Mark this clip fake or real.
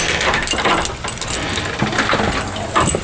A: real